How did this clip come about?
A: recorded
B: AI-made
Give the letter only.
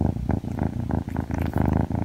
A